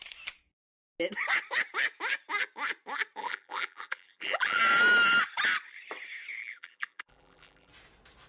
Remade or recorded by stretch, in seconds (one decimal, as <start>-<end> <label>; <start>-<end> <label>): 0.0-3.2 recorded; 3.2-4.6 remade; 4.6-6.4 recorded; 6.4-7.7 remade; 7.7-8.3 recorded